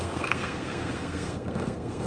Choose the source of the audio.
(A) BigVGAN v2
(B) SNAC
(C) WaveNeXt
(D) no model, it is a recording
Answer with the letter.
B